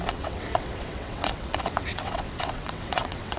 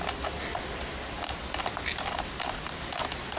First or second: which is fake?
first